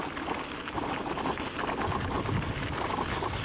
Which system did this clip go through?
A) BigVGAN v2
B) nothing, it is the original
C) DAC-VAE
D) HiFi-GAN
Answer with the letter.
B